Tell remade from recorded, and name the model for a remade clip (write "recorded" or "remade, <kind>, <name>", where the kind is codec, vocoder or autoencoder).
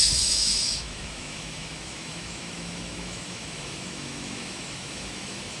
remade, autoencoder, DAC-VAE